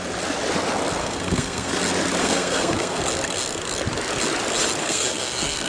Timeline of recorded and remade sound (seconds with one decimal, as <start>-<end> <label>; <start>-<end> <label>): 0.0-1.0 recorded; 1.0-1.7 remade; 1.7-2.2 recorded; 2.2-3.0 remade; 3.0-4.8 recorded; 4.8-5.7 remade

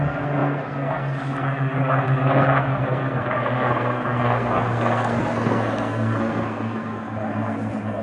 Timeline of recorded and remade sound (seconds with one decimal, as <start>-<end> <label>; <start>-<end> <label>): 0.0-8.0 remade